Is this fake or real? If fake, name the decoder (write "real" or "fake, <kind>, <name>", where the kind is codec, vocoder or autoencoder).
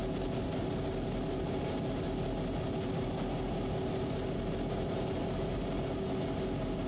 real